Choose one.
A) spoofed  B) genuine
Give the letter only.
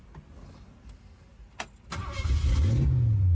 B